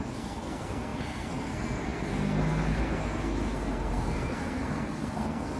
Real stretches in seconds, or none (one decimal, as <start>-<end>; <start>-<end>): none